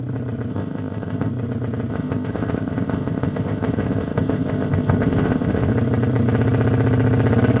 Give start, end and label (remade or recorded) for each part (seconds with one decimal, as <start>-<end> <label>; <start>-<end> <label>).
0.0-0.5 recorded; 0.5-1.3 remade; 1.3-1.9 recorded; 1.9-5.7 remade; 5.7-7.6 recorded